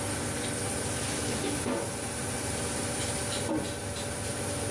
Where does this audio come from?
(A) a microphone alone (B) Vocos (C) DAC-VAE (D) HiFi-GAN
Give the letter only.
A